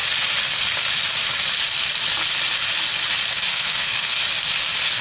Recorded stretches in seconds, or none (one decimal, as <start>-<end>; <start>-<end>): 0.0-3.5; 4.2-5.0